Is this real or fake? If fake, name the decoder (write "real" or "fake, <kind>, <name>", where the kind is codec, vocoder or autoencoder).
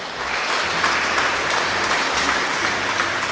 fake, vocoder, BigVGAN v2